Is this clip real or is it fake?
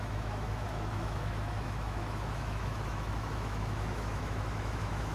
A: fake